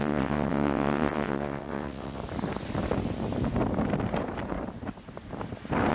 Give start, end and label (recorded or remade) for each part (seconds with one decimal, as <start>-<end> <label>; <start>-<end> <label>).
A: 0.0-2.2 remade; 2.2-5.9 recorded

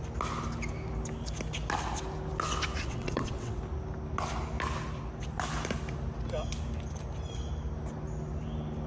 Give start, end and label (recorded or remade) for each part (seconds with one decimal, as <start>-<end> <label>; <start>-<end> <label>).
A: 0.0-2.8 recorded; 2.8-3.6 remade; 3.6-8.9 recorded

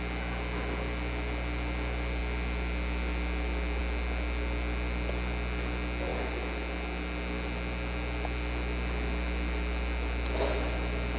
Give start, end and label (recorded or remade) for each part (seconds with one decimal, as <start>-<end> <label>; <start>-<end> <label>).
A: 0.0-11.2 recorded

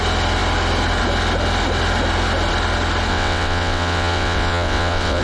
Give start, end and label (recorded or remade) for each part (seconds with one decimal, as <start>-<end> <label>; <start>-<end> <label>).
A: 0.0-3.1 recorded; 3.1-5.2 remade